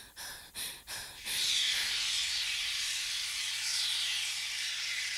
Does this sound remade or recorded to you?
remade